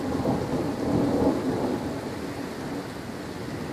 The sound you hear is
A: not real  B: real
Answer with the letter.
B